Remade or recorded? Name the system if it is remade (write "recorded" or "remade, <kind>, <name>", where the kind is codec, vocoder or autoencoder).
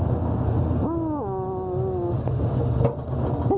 recorded